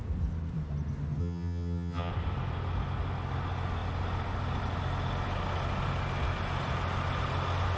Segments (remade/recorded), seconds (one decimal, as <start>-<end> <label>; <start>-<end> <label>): 0.0-1.2 recorded; 1.2-2.1 remade; 2.1-7.8 recorded